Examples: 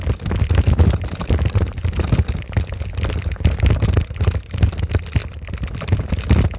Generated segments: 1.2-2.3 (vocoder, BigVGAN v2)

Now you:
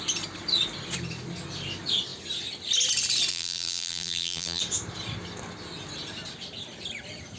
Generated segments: 3.3-4.6 (vocoder, BigVGAN v2)

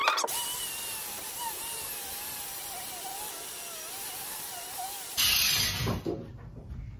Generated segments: none

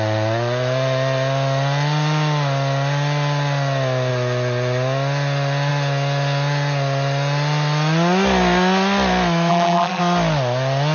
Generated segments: 9.5-10.0 (vocoder, BigVGAN v2)

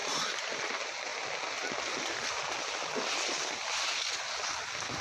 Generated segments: 0.0-0.6 (vocoder, BigVGAN v2)